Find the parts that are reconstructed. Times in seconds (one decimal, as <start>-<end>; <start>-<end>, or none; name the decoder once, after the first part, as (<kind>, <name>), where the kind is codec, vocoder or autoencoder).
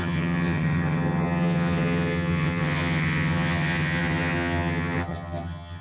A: 0.0-5.8 (vocoder, HiFi-GAN)